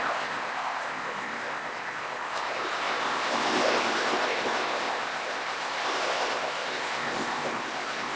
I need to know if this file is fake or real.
fake